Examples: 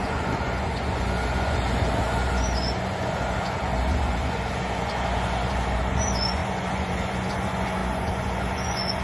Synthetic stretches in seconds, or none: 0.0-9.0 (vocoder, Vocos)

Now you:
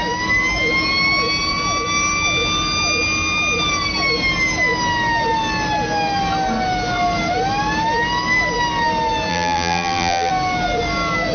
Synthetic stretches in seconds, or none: 9.3-10.3 (vocoder, BigVGAN v2)

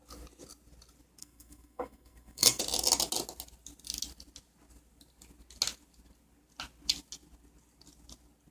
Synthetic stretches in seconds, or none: 1.2-2.6 (codec, SNAC)

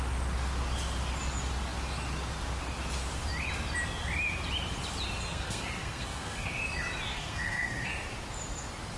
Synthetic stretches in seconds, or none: 5.3-6.5 (codec, SNAC); 7.1-7.9

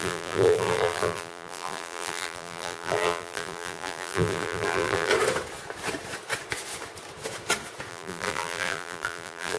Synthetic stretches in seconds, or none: 0.0-5.1 (vocoder, BigVGAN v2); 7.9-9.6

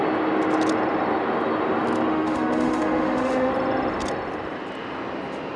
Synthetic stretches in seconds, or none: 2.1-3.5 (autoencoder, DAC-VAE)